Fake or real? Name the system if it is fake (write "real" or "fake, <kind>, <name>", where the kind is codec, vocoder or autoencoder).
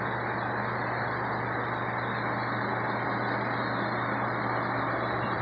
real